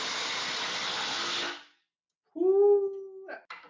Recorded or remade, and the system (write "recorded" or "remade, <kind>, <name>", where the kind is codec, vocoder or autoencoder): recorded